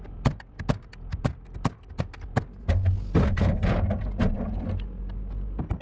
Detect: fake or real real